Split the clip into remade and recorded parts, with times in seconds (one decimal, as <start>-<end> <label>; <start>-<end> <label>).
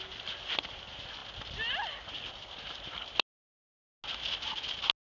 0.0-5.1 recorded